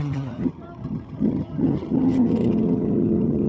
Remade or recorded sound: remade